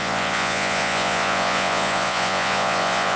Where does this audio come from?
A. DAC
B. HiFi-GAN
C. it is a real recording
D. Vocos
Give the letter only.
D